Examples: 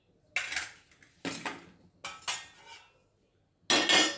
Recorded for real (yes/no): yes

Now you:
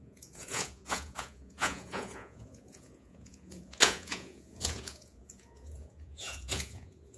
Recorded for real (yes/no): no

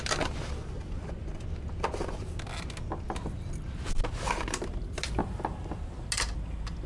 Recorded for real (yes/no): yes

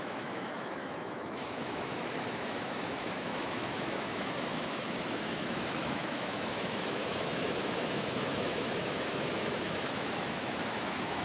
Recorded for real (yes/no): no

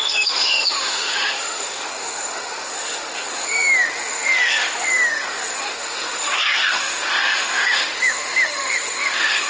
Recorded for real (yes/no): no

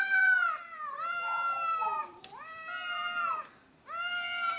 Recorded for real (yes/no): no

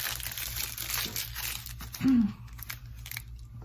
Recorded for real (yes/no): yes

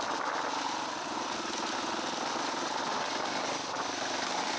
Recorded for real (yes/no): yes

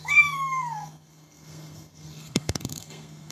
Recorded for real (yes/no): no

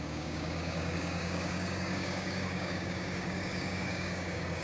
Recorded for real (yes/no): no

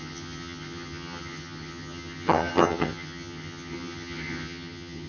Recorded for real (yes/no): no